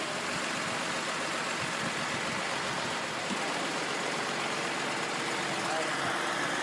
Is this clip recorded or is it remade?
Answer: recorded